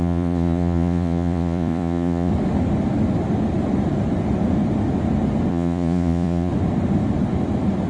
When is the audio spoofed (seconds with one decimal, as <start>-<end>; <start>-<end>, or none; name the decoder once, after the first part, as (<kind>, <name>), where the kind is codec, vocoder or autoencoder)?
0.0-2.3 (vocoder, Vocos); 5.5-6.5